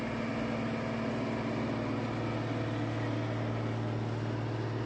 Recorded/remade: recorded